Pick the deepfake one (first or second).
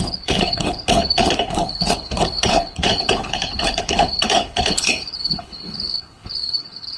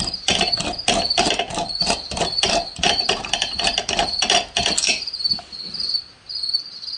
first